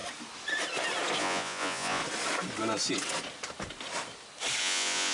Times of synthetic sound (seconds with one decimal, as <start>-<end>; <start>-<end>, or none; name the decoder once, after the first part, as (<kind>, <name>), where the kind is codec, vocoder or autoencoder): 1.2-2.0 (vocoder, Vocos); 4.6-5.1